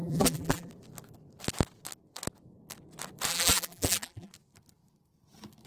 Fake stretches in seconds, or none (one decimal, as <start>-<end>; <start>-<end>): 0.0-0.7; 3.3-4.3